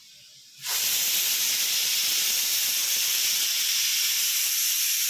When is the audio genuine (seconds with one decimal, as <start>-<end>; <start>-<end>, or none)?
0.0-5.1